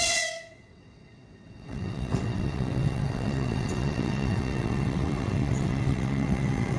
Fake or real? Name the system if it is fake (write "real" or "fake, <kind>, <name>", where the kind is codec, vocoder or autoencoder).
fake, vocoder, WaveNeXt